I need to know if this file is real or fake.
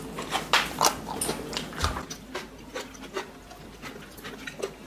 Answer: real